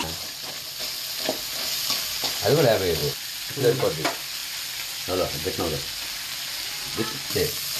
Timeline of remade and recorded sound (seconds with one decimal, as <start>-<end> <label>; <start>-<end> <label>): 0.0-7.8 recorded

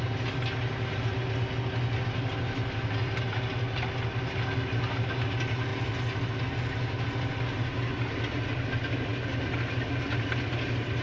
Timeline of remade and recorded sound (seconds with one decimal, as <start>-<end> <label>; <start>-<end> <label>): 0.0-11.0 recorded

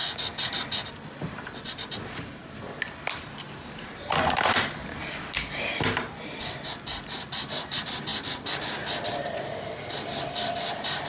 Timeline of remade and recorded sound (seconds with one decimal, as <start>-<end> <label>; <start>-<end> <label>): 0.0-11.1 recorded

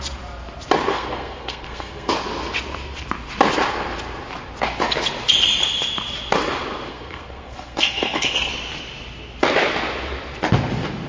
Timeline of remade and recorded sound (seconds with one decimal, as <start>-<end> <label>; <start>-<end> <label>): 0.0-0.9 recorded; 0.9-2.1 remade; 2.1-6.9 recorded; 6.9-8.5 remade; 8.5-11.1 recorded